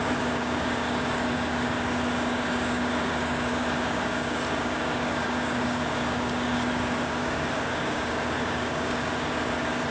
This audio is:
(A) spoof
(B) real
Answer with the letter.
A